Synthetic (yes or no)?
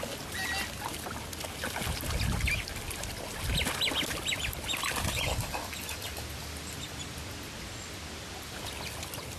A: no